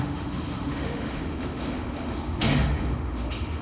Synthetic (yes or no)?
yes